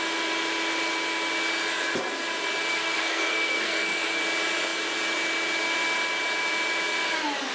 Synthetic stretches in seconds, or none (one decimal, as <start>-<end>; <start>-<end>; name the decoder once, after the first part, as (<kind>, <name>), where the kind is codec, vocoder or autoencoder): 2.7-4.2 (codec, SNAC)